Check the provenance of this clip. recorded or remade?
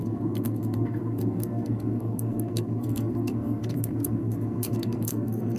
remade